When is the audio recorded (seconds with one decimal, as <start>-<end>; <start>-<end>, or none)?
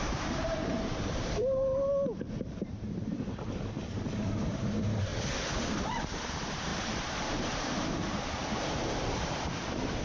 1.7-2.2; 5.1-5.7